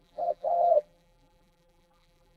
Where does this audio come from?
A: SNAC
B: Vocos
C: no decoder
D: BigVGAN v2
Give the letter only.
D